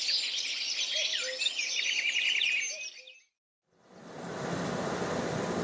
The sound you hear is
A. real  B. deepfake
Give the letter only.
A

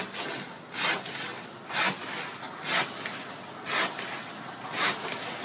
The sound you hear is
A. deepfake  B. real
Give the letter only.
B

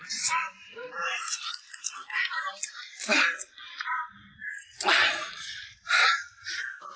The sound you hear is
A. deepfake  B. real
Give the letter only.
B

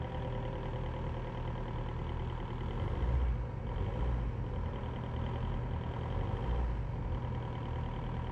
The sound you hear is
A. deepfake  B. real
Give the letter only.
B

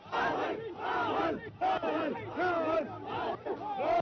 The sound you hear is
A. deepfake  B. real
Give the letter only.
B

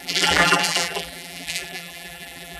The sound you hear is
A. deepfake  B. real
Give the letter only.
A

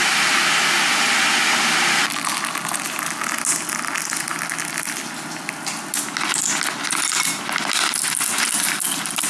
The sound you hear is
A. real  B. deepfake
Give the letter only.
A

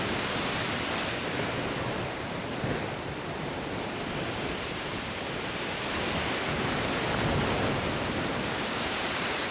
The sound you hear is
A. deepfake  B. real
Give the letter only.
A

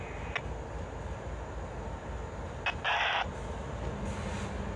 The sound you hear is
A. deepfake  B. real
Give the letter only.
B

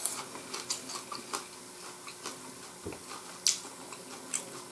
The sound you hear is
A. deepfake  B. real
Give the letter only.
B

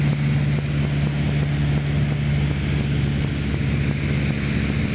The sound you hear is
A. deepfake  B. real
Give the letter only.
B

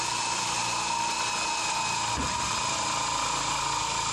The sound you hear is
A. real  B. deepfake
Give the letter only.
A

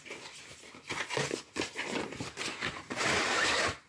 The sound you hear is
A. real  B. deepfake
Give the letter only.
B